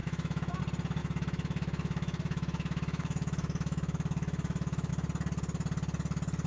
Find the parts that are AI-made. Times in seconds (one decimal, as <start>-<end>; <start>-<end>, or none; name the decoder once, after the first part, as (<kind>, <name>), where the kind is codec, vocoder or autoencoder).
0.0-0.6 (autoencoder, DAC-VAE); 1.0-4.9